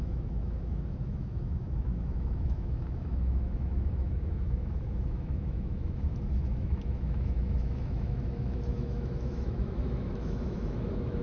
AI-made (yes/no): yes